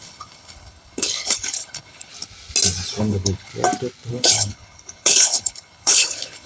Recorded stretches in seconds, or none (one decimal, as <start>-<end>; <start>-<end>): 2.1-3.0; 3.5-4.1